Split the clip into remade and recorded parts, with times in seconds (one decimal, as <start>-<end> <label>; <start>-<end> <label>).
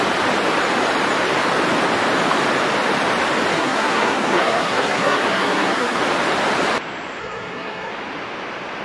0.0-3.5 recorded; 3.5-6.0 remade; 6.0-7.2 recorded; 7.2-7.9 remade; 7.9-8.8 recorded